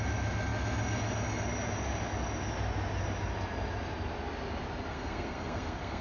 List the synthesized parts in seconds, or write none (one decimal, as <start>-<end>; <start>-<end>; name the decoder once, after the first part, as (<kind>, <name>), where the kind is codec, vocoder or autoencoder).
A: 4.9-6.0 (codec, SNAC)